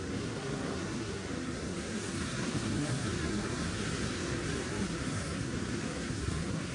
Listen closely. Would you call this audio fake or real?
fake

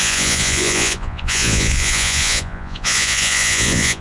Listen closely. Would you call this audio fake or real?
fake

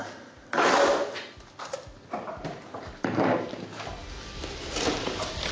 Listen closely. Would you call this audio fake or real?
fake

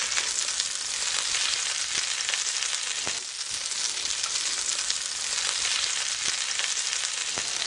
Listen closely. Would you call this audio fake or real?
real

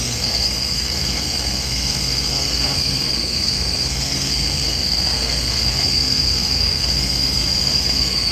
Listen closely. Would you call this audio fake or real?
fake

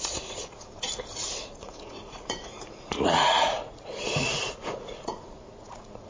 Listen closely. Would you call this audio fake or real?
fake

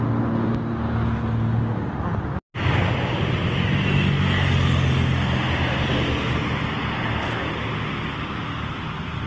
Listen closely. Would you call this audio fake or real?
real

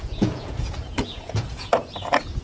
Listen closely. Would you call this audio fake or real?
fake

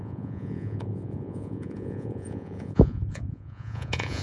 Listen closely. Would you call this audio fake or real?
fake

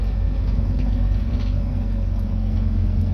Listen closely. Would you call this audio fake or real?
fake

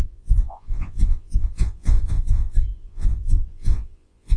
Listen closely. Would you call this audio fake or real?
fake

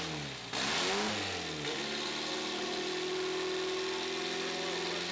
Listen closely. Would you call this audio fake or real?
real